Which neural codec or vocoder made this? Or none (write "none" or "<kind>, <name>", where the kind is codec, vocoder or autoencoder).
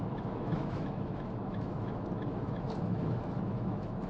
autoencoder, DAC-VAE